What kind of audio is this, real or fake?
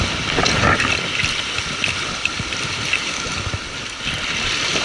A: real